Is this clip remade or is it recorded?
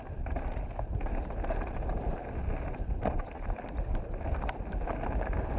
recorded